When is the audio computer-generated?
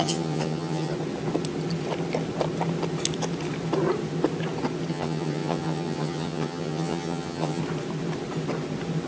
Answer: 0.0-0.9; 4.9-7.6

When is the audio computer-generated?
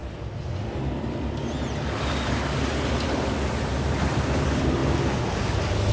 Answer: none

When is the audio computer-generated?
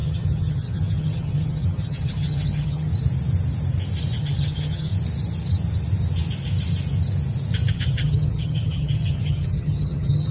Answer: 0.0-2.9; 4.2-4.9; 7.7-10.3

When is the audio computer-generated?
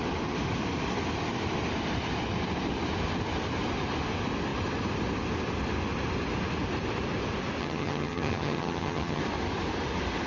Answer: 7.6-9.2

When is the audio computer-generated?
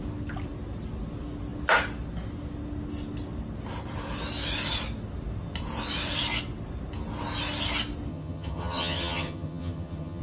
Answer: 8.1-10.2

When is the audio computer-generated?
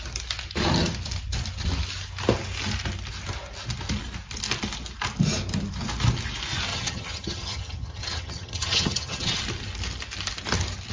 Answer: 6.7-9.4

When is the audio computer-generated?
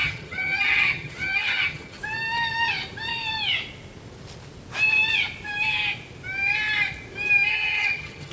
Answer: 0.0-2.0; 7.5-8.3